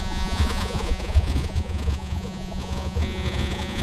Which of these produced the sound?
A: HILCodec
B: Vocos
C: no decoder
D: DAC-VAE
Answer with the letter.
B